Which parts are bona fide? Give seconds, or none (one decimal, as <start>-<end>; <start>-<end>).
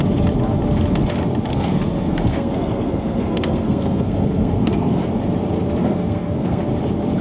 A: 0.0-1.5; 5.0-5.8; 6.6-7.2